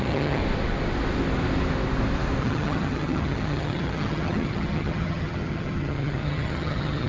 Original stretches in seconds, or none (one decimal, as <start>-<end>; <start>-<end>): 0.4-2.4